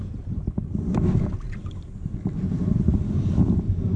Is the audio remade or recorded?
recorded